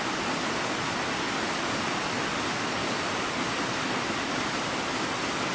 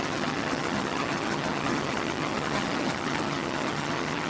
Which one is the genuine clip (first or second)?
first